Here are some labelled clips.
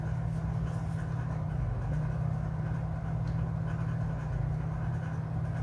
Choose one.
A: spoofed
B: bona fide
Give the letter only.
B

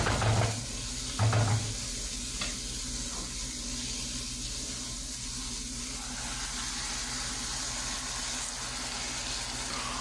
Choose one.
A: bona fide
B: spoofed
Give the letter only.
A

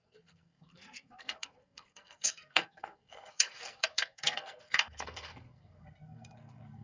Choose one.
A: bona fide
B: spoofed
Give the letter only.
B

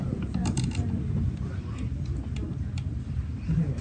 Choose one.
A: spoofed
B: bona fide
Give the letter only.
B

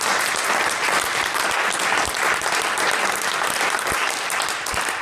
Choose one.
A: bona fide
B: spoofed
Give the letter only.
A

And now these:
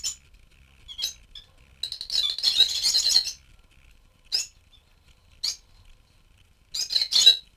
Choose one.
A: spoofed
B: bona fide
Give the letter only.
B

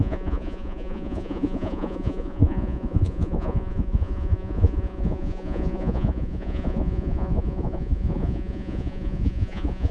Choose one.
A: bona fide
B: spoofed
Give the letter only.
B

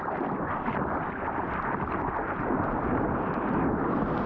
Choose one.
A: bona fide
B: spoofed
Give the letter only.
A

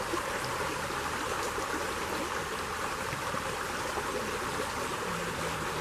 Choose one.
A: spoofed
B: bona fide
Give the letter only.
B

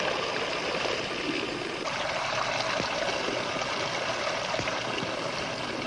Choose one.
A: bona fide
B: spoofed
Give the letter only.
A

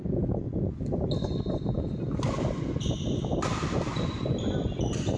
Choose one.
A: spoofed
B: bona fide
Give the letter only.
B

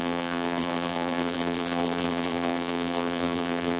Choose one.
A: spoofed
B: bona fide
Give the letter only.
A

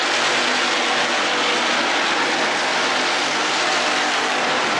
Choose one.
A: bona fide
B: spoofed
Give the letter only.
A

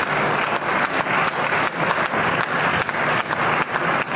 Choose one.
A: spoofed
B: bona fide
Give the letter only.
B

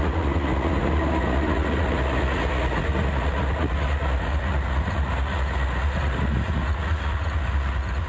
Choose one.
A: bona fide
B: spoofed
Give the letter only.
B